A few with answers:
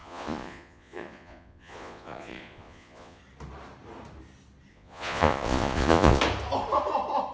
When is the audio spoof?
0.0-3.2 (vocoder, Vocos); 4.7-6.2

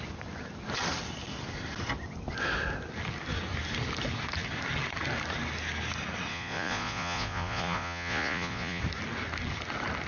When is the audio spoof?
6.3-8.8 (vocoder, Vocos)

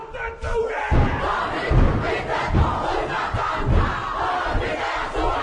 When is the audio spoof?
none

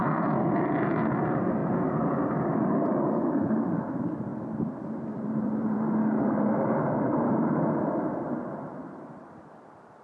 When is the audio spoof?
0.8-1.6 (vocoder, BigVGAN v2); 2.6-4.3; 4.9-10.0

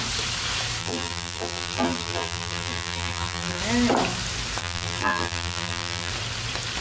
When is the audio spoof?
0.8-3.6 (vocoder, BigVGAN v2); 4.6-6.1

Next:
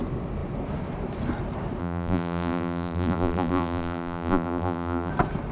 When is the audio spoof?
1.8-5.1 (vocoder, BigVGAN v2)